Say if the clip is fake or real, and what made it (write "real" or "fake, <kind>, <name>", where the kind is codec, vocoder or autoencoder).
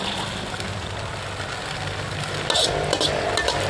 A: real